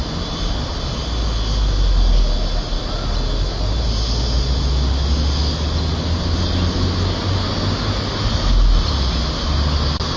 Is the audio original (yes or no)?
yes